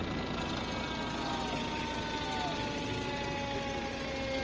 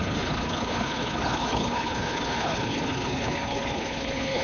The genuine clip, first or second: first